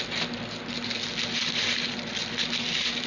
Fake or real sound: real